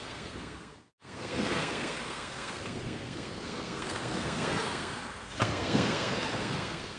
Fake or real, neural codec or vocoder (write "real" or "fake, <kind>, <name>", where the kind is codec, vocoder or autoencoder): fake, codec, SNAC